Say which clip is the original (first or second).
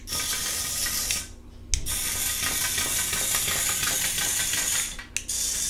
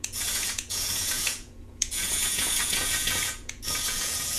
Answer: first